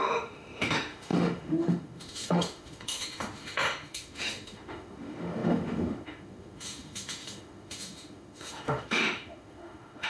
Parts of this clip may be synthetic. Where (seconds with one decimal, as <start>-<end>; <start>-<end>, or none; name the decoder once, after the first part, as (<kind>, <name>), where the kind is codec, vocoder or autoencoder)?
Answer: 0.0-10.1 (autoencoder, DAC-VAE)